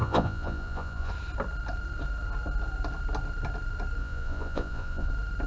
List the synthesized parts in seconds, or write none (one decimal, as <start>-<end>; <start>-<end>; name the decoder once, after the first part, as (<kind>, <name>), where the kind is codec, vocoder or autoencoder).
0.0-1.1 (vocoder, Vocos); 4.0-5.1